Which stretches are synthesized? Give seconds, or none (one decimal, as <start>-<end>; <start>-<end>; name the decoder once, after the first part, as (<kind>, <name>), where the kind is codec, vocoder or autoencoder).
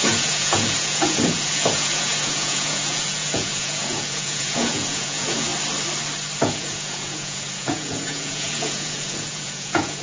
0.0-5.5 (vocoder, Vocos); 6.4-10.0